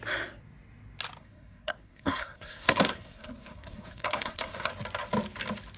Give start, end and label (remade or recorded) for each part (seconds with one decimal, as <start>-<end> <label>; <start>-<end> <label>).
0.0-1.2 recorded; 1.2-4.7 remade; 4.7-5.8 recorded